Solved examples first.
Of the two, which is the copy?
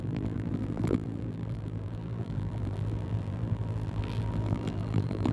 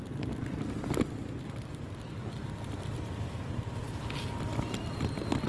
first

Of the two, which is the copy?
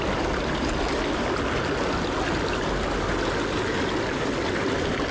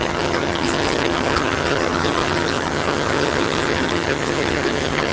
second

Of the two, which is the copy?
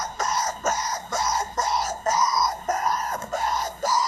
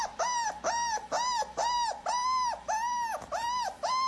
first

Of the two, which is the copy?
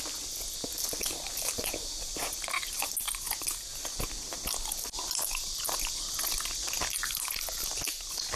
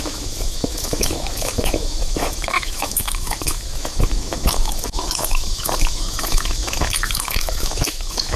second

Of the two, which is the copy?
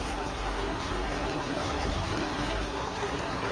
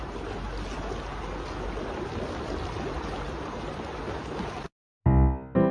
first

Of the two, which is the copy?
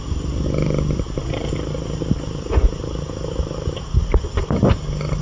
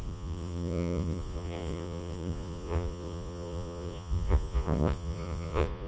second